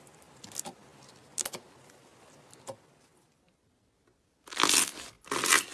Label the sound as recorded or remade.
recorded